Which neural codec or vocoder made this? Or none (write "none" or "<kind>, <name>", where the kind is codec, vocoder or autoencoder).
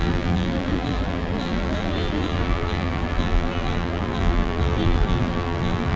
vocoder, BigVGAN v2